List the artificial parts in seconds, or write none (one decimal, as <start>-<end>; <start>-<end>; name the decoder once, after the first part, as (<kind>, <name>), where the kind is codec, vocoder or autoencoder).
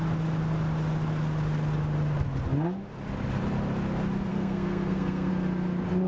4.3-5.3 (codec, SNAC)